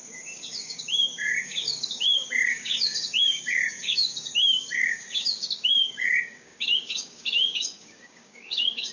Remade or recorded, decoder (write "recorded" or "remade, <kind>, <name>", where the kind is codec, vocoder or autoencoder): remade, codec, DAC